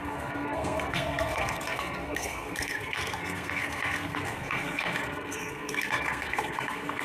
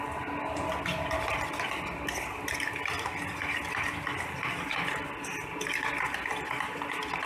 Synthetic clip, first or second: first